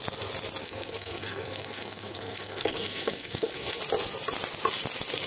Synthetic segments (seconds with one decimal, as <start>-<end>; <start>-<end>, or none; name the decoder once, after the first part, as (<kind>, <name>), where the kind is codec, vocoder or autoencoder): 0.6-3.8 (codec, SNAC)